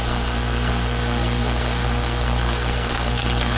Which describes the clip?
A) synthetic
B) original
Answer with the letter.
A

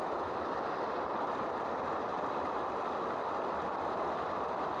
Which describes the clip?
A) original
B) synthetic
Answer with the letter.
A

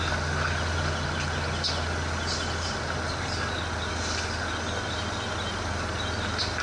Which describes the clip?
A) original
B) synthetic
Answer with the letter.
A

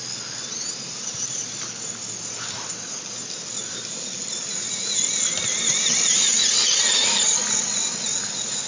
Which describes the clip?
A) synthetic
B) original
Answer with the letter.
B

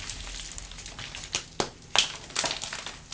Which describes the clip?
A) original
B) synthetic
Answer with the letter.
A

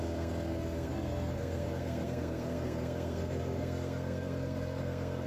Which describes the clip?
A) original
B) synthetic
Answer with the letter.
B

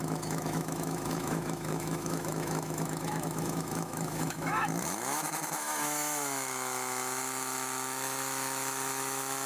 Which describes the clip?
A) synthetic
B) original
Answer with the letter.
A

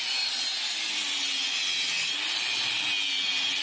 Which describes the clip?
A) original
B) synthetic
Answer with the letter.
A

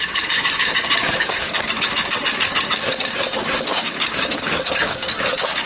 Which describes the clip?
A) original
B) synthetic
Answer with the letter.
B